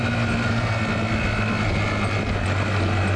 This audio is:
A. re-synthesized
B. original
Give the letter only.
B